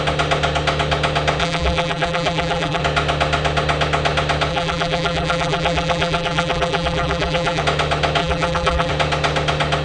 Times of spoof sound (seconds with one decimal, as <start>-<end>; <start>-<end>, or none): 1.4-2.8; 4.5-7.6; 8.2-8.9